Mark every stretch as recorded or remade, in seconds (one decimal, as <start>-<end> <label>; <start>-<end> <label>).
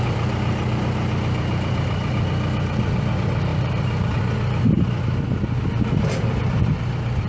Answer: 0.0-3.5 recorded; 3.5-4.1 remade; 4.1-7.3 recorded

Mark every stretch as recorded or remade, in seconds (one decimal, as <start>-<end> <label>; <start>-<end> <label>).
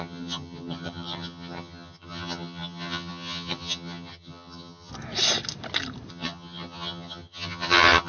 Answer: 0.0-4.9 remade; 4.9-6.1 recorded; 6.1-8.1 remade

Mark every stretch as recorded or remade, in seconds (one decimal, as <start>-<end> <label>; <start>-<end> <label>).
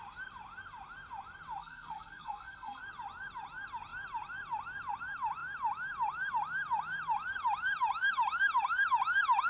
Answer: 0.0-1.6 recorded; 1.6-2.8 remade; 2.8-9.5 recorded